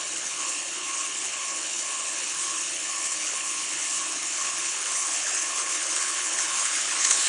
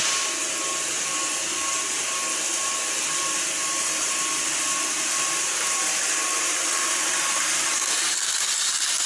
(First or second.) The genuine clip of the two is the second